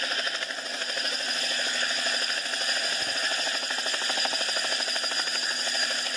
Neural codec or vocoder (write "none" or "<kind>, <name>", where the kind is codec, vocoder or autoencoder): none